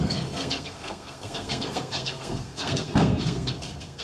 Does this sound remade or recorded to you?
remade